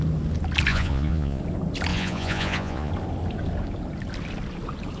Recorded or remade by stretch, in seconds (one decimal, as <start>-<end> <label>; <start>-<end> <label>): 0.0-0.7 recorded; 0.7-1.4 remade; 1.4-1.9 recorded; 1.9-2.9 remade; 2.9-5.0 recorded